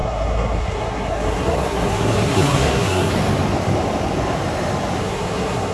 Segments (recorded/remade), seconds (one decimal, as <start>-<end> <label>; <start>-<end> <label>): 0.0-3.1 remade; 3.1-5.0 recorded; 5.0-5.7 remade